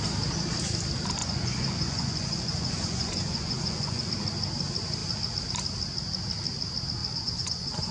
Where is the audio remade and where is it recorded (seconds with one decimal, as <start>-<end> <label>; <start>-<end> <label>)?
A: 0.0-1.2 recorded; 1.2-4.1 remade; 4.1-7.0 recorded; 7.0-7.9 remade